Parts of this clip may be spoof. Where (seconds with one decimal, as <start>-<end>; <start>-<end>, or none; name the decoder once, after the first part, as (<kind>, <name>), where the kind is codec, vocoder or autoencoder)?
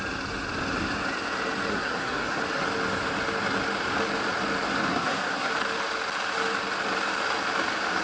1.7-2.4 (codec, SNAC); 4.9-5.5